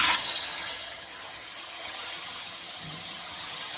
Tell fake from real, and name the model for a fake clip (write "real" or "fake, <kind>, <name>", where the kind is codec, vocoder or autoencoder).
fake, vocoder, HiFi-GAN